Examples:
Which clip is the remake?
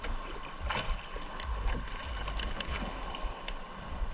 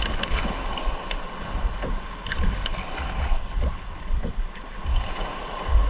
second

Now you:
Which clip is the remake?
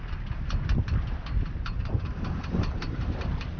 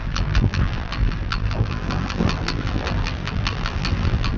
second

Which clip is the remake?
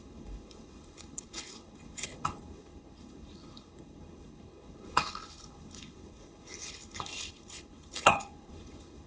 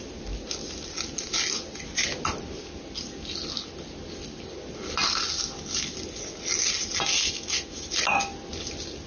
first